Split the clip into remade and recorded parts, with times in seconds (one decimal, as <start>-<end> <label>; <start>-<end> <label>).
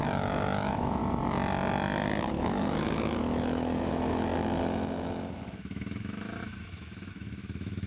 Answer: 0.0-1.0 remade; 1.0-2.2 recorded; 2.2-7.9 remade